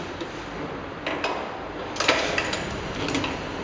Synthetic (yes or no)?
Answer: no